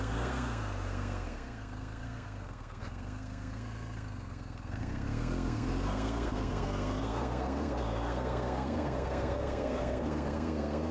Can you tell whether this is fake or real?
fake